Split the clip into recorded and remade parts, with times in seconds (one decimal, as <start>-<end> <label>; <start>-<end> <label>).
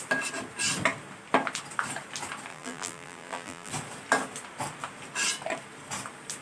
0.0-2.5 recorded; 2.5-3.7 remade; 3.7-6.4 recorded